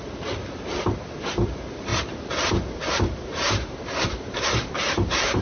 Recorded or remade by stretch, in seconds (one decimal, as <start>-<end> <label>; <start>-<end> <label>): 0.0-1.9 recorded; 1.9-5.4 remade